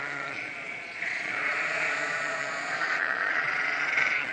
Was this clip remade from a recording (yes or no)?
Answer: yes